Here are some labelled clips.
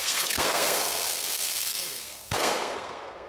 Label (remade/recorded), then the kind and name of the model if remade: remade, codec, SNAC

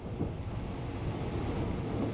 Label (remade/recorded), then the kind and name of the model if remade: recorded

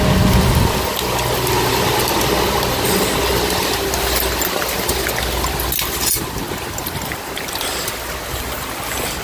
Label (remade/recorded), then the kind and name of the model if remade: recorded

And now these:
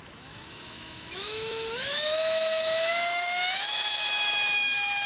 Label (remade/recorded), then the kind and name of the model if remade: remade, autoencoder, DAC-VAE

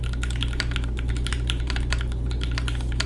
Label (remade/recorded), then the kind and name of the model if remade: recorded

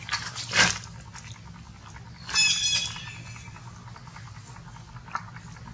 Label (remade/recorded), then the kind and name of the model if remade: recorded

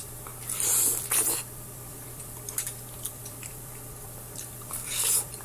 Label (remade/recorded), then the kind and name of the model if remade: remade, vocoder, BigVGAN v2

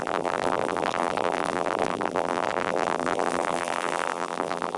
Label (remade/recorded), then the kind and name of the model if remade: remade, vocoder, BigVGAN v2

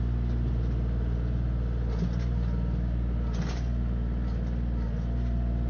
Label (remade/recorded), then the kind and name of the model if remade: recorded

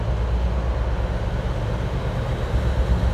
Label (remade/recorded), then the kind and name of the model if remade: recorded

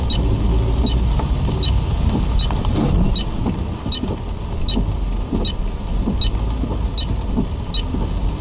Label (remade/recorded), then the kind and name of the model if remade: recorded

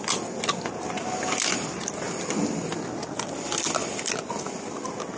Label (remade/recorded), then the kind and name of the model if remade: recorded